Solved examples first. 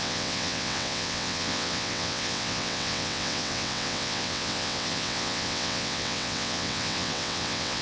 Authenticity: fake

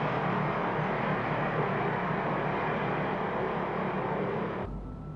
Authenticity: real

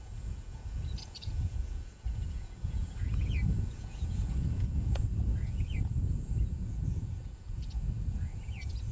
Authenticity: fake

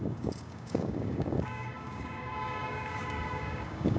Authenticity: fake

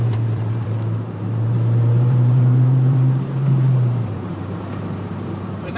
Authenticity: fake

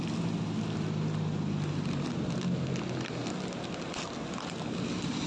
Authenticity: real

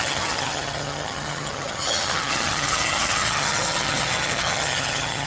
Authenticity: fake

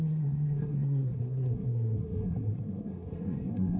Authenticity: fake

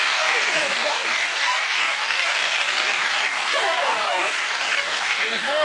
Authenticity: fake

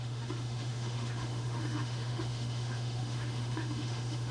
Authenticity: fake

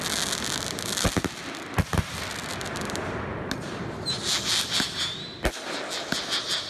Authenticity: real